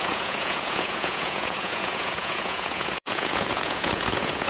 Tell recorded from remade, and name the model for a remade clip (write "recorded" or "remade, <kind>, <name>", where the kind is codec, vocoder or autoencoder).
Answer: remade, vocoder, Vocos